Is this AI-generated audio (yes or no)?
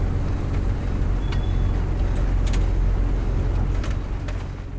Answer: no